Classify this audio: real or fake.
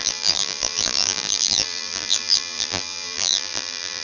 fake